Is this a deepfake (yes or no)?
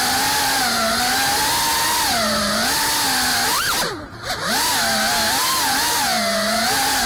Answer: no